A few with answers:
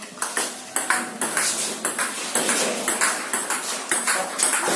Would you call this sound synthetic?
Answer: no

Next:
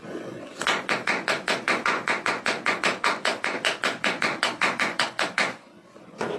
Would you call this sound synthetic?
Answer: yes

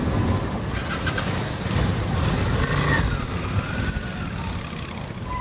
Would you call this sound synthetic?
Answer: no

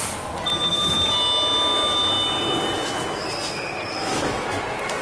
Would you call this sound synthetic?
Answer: no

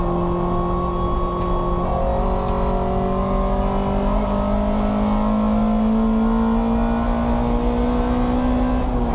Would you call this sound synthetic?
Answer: no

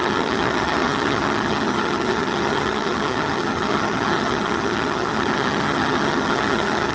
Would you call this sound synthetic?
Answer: yes